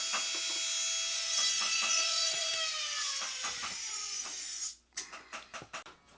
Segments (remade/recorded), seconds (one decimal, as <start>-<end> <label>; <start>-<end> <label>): 0.0-1.1 recorded; 1.1-2.5 remade; 2.5-3.0 recorded; 3.0-5.6 remade; 5.6-6.2 recorded